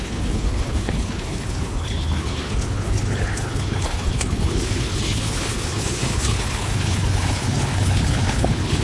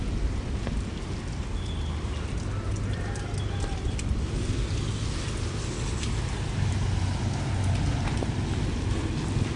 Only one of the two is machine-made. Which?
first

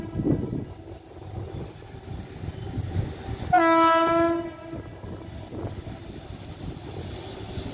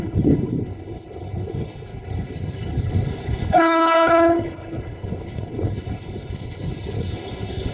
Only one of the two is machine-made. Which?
second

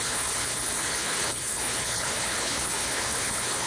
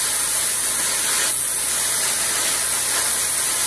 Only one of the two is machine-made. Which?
first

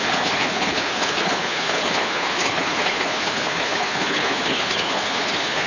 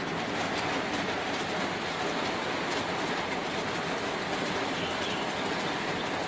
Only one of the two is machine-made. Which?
first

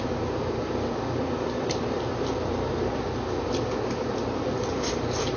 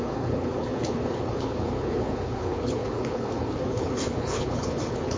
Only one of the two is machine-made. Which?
second